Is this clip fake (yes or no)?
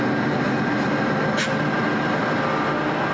no